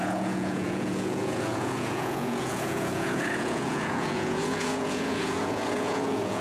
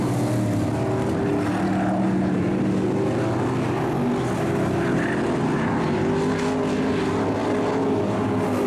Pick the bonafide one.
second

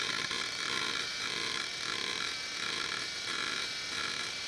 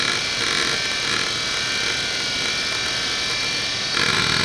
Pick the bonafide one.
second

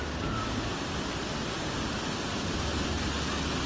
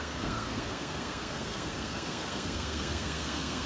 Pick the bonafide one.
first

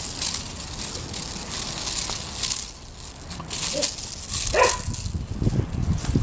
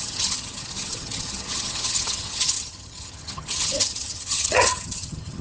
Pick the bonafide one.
first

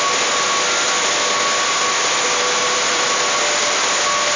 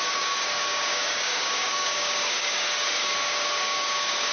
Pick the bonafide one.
first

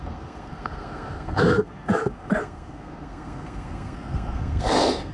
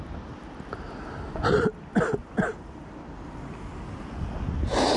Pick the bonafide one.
second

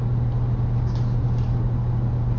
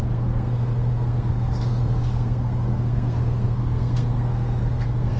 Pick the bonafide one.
first